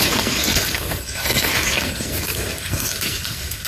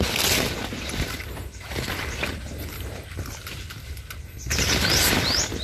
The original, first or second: second